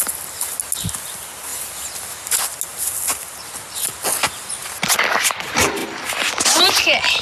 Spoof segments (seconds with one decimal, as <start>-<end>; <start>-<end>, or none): none